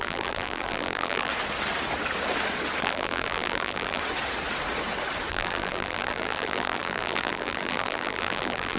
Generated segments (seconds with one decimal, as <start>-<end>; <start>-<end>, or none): 0.0-1.3; 2.8-4.0; 5.3-8.8